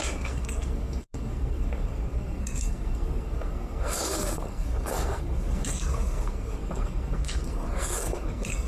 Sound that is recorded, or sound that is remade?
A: remade